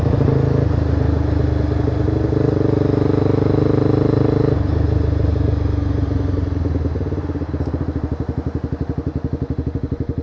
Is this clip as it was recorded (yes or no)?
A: yes